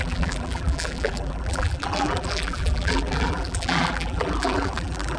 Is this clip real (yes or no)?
no